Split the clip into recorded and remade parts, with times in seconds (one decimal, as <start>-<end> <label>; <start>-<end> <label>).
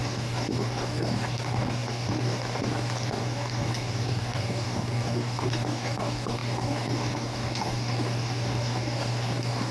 0.0-9.7 remade